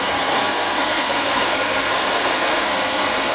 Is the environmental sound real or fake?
fake